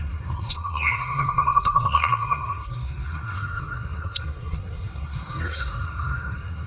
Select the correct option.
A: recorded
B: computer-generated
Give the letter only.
B